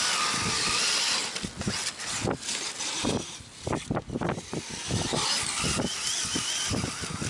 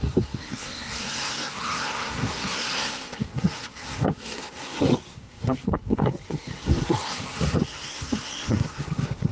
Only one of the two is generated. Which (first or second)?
second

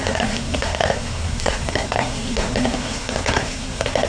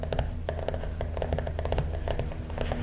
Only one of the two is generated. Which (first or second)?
first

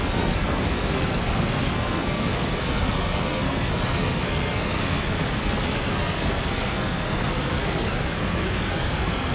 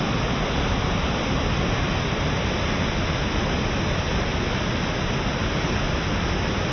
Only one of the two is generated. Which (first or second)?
first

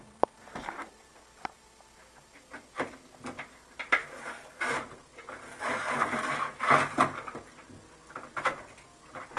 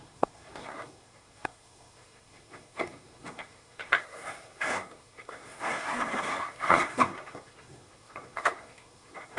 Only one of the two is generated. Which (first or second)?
second